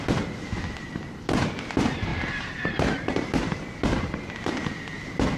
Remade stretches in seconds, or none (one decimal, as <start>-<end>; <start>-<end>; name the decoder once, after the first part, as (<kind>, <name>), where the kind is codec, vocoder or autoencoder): 0.8-1.5 (vocoder, BigVGAN v2); 2.1-3.7